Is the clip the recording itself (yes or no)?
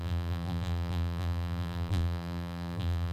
no